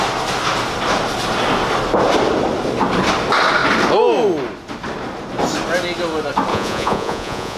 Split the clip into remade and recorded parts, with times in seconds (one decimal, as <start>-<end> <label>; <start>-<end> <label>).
0.0-6.5 recorded; 6.5-7.6 remade